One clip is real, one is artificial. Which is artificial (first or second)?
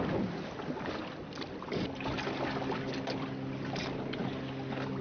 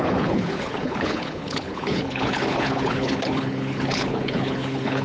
second